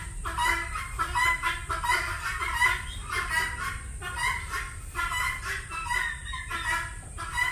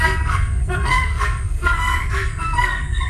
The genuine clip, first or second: first